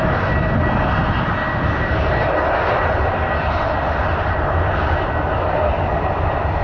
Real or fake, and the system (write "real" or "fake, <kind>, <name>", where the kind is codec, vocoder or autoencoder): real